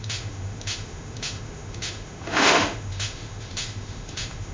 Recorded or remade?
remade